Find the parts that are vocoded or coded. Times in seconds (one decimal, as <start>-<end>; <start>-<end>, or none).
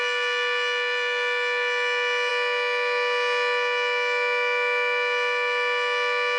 none